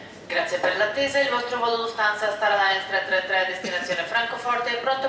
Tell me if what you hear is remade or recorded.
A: remade